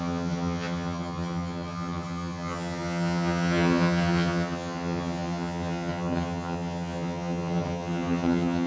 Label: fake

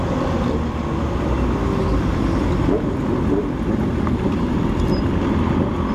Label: real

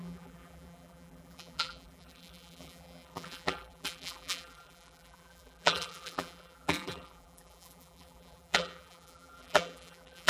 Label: fake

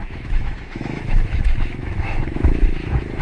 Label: fake